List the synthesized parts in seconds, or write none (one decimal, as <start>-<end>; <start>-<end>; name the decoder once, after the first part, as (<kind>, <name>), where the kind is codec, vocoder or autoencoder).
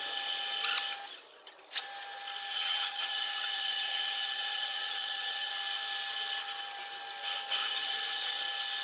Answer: 2.5-5.5 (vocoder, HiFi-GAN); 7.6-8.4